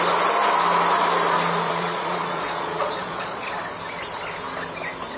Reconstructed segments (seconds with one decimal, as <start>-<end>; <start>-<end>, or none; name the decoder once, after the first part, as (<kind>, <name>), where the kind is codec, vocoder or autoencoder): 1.7-3.5 (vocoder, Vocos)